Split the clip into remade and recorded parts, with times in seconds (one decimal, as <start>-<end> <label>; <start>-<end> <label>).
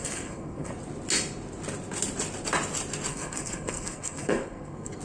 0.0-0.7 remade; 0.7-3.1 recorded; 3.1-5.0 remade